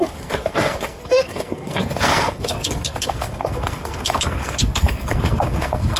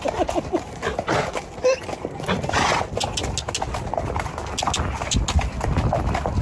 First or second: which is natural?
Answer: second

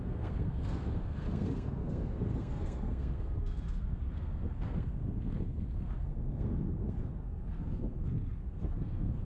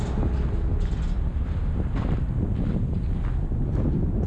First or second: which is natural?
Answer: second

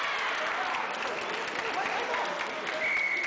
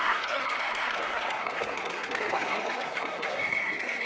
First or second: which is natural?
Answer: first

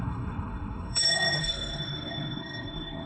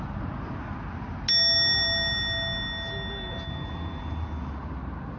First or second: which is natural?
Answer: second